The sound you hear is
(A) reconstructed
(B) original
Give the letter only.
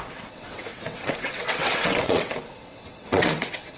A